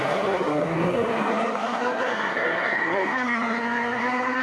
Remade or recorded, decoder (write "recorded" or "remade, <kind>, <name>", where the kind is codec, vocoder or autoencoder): remade, codec, SNAC